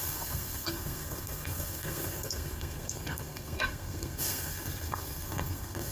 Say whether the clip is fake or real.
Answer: fake